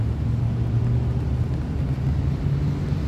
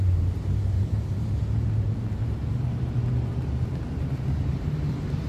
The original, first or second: first